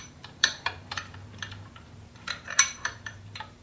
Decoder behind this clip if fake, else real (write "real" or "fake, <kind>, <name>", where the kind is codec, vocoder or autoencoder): fake, vocoder, BigVGAN v2